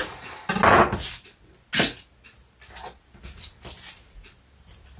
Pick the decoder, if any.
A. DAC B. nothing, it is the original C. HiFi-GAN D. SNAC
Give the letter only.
B